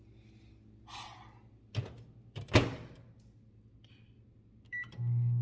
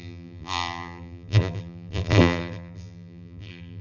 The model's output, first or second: second